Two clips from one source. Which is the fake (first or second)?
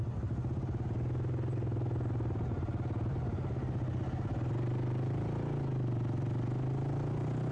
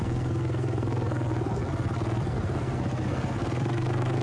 second